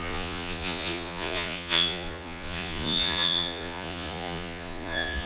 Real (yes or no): no